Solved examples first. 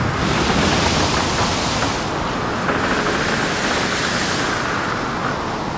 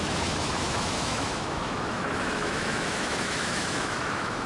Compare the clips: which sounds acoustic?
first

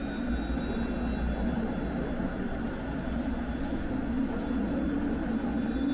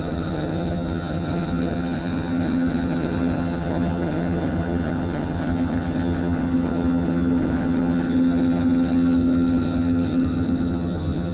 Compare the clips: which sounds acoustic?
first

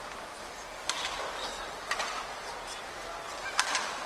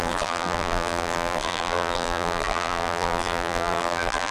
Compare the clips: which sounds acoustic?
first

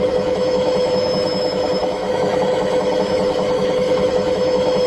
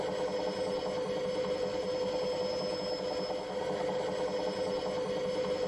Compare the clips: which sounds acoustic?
second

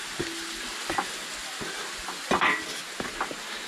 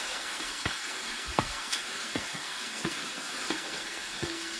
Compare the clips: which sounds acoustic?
first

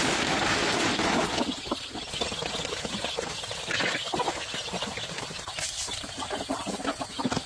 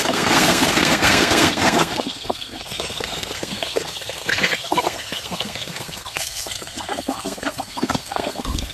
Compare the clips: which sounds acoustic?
first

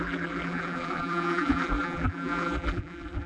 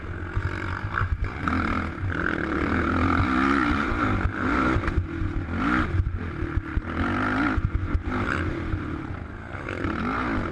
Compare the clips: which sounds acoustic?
second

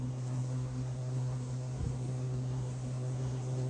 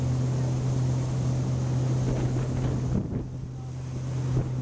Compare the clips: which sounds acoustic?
second